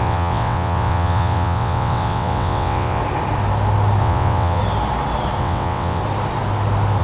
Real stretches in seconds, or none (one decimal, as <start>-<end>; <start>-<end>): 3.0-4.0; 4.6-5.4; 6.0-7.0